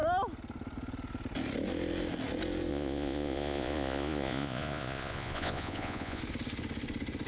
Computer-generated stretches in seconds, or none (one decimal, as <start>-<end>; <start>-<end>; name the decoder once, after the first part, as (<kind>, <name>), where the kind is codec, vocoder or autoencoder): 2.7-6.2 (vocoder, Vocos)